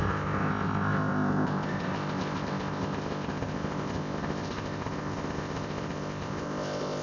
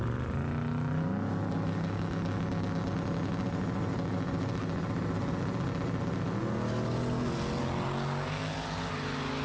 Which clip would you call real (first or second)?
second